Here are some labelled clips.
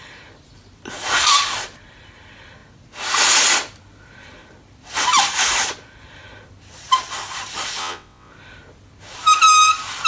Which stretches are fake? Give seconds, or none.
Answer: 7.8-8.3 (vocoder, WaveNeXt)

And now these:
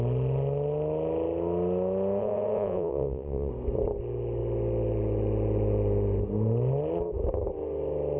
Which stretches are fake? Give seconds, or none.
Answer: 2.2-3.5 (vocoder, WaveNeXt)

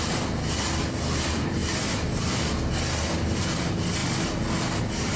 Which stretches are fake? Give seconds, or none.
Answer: none

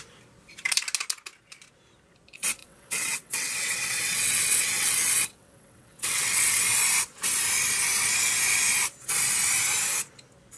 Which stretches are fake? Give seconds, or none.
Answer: 2.6-6.6 (vocoder, WaveNeXt)

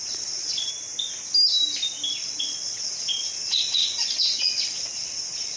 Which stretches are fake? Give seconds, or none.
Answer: 0.0-0.7 (vocoder, WaveNeXt); 2.1-5.6

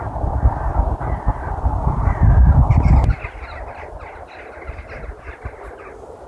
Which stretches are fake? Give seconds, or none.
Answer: none

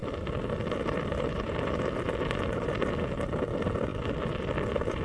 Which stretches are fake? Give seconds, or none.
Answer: none